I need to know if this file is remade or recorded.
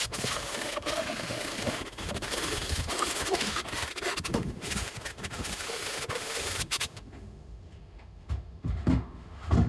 remade